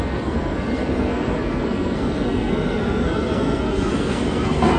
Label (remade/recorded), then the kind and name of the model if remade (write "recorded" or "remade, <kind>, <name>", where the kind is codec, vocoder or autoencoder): remade, codec, SNAC